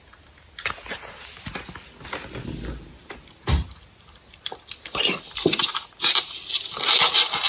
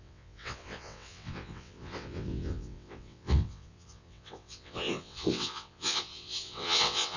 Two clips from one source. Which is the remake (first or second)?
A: second